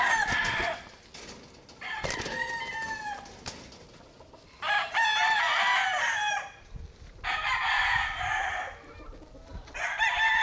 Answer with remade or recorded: recorded